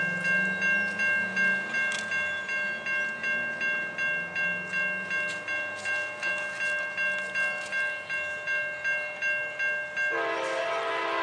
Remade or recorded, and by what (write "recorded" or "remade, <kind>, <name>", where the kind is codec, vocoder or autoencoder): recorded